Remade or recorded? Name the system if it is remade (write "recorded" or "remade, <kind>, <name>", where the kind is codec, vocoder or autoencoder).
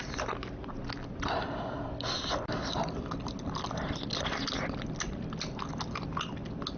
recorded